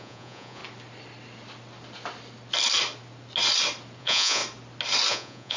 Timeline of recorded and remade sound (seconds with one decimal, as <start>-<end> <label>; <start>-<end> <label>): 0.0-0.6 remade; 0.6-4.0 recorded; 4.0-4.4 remade; 4.4-5.1 recorded; 5.1-5.6 remade